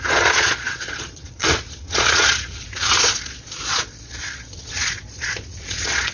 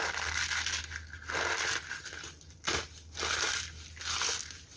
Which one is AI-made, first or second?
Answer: first